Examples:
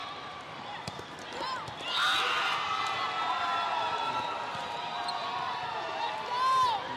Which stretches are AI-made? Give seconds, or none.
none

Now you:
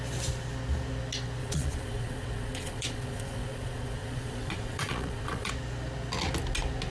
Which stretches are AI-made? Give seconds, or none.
1.4-5.5 (vocoder, Vocos)

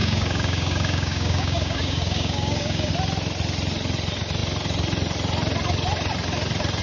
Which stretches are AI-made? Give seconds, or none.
0.0-2.9 (codec, DAC)

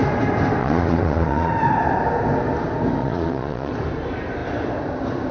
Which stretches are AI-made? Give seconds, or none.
0.6-1.5 (vocoder, Vocos); 3.0-3.7